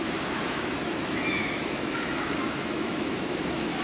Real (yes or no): no